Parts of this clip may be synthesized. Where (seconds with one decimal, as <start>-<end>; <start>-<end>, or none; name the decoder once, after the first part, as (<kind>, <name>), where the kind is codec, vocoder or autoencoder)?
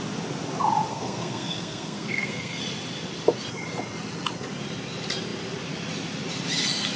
0.9-2.6 (codec, SNAC)